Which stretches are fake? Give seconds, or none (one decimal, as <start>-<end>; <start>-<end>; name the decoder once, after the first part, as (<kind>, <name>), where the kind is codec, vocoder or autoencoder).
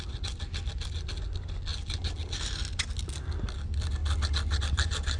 none